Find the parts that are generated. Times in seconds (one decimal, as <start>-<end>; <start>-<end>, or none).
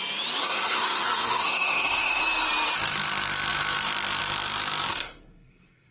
0.4-2.2; 4.9-5.9